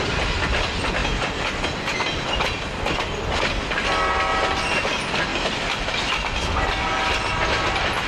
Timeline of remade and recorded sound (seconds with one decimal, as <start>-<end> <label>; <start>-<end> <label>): 0.0-8.1 recorded